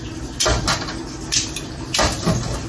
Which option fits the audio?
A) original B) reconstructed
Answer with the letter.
A